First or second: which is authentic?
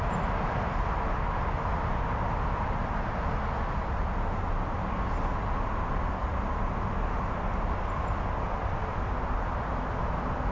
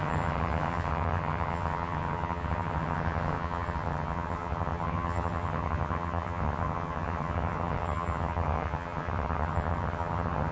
first